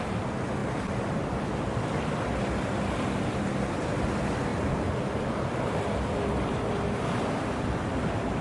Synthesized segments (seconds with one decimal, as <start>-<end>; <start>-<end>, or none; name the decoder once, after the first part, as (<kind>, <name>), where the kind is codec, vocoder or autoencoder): none